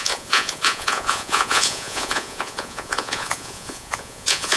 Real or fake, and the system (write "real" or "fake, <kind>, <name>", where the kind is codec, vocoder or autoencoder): fake, vocoder, Vocos